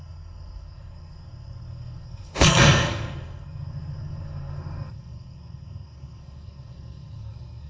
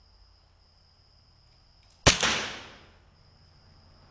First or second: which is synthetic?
first